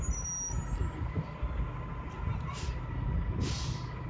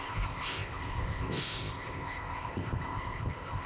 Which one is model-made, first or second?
second